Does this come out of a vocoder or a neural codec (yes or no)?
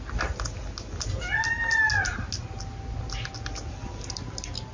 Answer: no